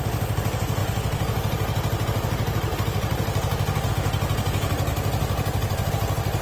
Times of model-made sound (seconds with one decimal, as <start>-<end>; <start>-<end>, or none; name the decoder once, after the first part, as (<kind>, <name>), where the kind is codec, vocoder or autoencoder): none